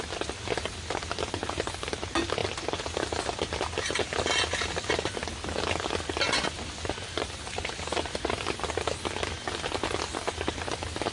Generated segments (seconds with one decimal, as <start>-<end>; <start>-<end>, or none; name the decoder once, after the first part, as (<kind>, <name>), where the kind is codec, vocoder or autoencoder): none